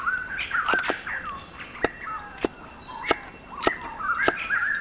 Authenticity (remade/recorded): recorded